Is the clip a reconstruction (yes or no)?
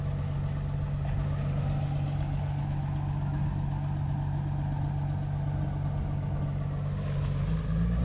no